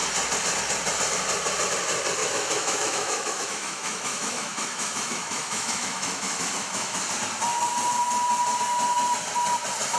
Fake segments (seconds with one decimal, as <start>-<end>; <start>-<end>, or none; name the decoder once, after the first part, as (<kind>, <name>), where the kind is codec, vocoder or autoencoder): 2.2-7.1 (autoencoder, DAC-VAE)